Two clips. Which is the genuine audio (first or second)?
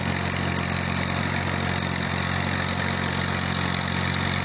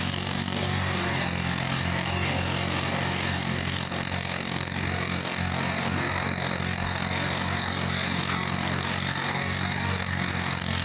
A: first